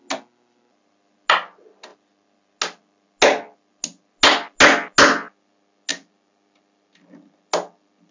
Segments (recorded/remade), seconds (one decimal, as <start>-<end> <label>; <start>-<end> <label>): 0.0-8.1 recorded